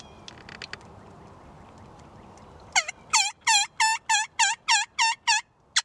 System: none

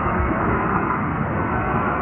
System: codec, SNAC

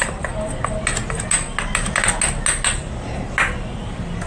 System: none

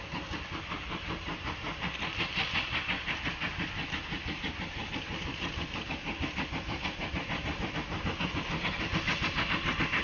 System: none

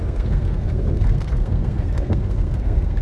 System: codec, SNAC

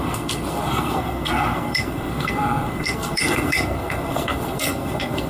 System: codec, SNAC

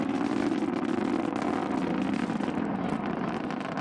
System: none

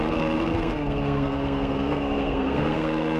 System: codec, SNAC